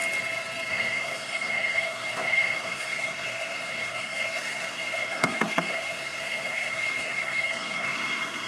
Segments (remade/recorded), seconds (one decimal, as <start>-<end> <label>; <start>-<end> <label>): 0.0-0.7 recorded; 0.7-8.5 remade